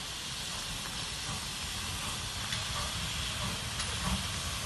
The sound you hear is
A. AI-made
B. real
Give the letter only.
B